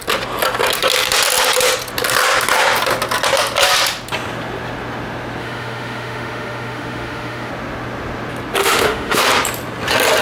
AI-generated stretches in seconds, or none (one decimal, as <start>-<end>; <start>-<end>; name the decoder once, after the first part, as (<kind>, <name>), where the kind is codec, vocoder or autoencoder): 5.4-7.5 (autoencoder, DAC-VAE); 8.6-9.2